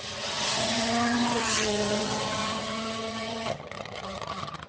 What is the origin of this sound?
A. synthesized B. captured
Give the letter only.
A